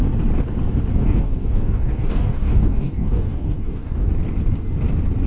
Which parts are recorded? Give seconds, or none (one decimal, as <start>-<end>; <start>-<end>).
0.0-0.9; 4.1-5.3